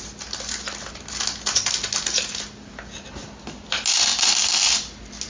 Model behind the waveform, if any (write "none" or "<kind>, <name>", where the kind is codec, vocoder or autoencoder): none